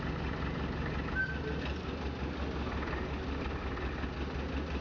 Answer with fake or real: real